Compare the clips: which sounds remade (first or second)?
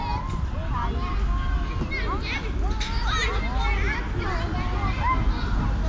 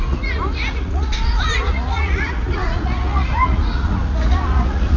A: second